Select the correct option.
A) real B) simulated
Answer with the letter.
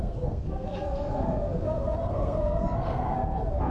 B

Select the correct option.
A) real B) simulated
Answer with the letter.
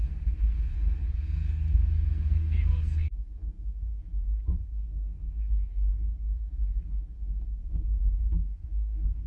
B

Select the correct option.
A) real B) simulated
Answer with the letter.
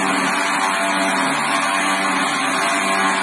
A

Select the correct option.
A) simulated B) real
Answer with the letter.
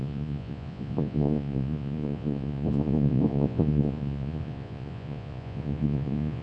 A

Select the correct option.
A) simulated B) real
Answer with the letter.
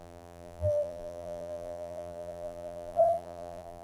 A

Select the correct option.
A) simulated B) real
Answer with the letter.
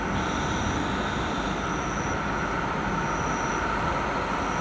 B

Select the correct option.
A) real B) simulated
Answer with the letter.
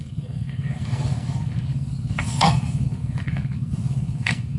B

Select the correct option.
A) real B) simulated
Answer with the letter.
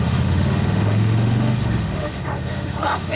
B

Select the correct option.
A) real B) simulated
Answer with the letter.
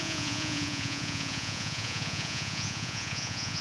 B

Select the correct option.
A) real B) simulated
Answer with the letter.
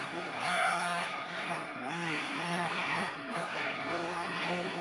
B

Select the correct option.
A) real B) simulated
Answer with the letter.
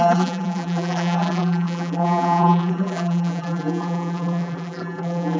B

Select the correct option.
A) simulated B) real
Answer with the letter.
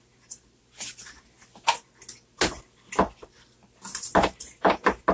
B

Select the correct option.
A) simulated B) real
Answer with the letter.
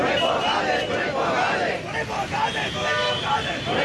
B